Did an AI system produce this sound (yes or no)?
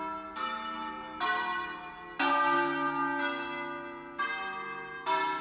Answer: no